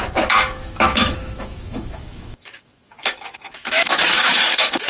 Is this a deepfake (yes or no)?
yes